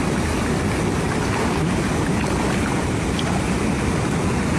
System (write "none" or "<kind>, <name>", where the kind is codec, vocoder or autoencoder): none